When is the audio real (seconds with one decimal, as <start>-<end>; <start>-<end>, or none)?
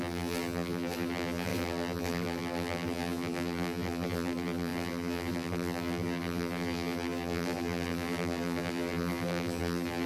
none